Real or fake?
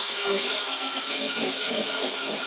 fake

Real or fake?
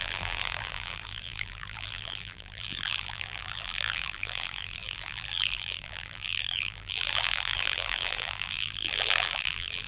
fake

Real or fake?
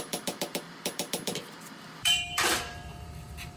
fake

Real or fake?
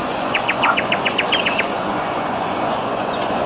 fake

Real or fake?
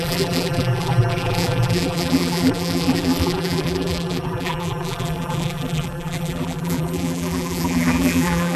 fake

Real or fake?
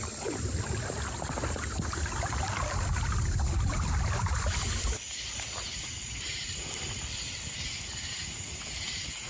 real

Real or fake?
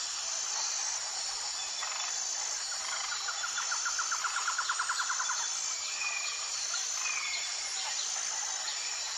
real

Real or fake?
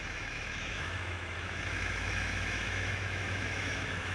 fake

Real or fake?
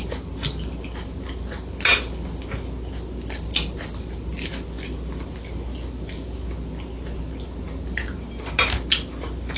real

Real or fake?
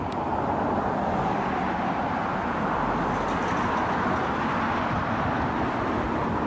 real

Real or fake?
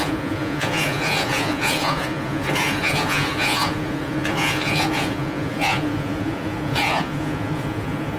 fake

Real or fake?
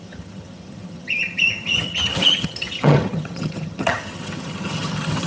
fake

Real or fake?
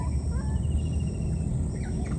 real